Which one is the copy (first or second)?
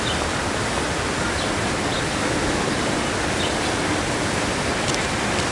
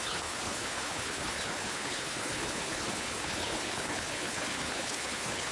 second